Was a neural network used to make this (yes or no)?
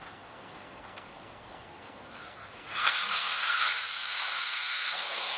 yes